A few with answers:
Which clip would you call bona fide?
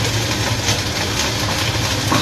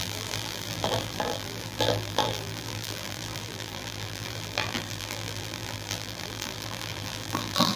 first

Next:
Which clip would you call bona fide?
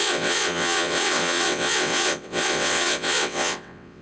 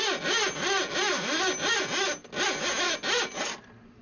second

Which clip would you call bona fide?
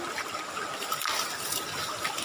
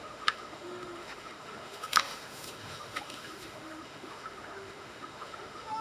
first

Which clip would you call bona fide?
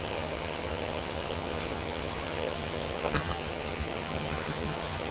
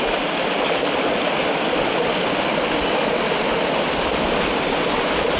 second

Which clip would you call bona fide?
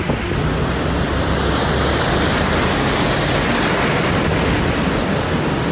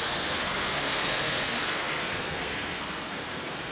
first